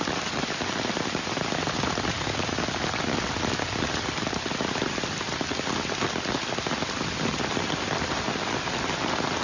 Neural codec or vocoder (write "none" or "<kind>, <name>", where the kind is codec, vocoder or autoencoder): none